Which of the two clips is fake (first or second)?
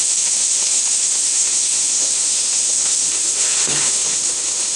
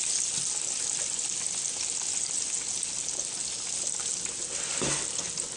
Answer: first